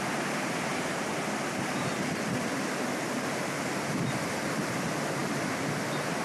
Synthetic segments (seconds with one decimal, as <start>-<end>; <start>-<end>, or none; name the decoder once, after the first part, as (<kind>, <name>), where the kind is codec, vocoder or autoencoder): 0.7-2.8 (vocoder, BigVGAN v2); 5.2-6.2